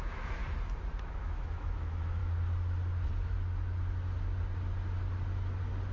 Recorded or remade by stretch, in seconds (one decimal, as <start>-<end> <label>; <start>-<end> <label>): 0.0-0.4 remade; 0.4-1.0 recorded; 1.0-2.2 remade; 2.2-5.9 recorded